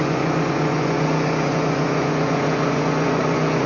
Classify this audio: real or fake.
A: fake